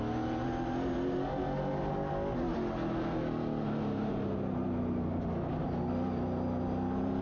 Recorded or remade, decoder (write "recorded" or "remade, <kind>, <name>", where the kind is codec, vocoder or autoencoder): recorded